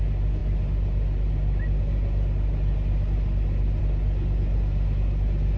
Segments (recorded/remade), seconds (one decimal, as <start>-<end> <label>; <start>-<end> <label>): 0.0-5.6 recorded

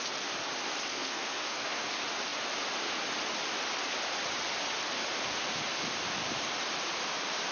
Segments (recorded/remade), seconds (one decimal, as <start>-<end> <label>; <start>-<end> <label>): 0.0-0.9 recorded; 0.9-1.9 remade; 1.9-7.5 recorded

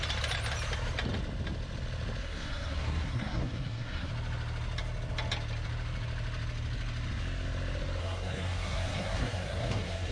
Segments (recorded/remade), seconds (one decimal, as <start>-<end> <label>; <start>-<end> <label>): 0.0-2.2 recorded; 2.2-4.1 remade; 4.1-8.0 recorded; 8.0-10.1 remade

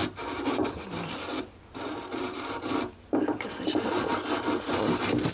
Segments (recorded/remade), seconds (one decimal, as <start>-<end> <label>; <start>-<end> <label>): 0.0-5.3 recorded

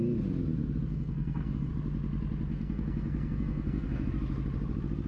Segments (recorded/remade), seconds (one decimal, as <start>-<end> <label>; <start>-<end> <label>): 0.0-0.9 recorded; 0.9-1.7 remade; 1.7-2.5 recorded; 2.5-4.1 remade; 4.1-5.1 recorded

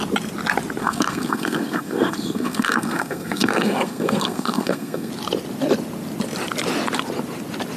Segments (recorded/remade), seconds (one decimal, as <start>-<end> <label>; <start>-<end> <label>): 0.0-0.8 recorded; 0.8-5.1 remade; 5.1-7.8 recorded